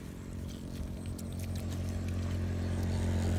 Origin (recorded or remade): recorded